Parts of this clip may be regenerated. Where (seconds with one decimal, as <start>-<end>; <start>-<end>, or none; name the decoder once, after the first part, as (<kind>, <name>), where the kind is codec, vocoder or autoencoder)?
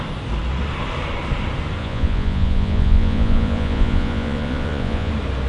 1.8-5.1 (vocoder, Vocos)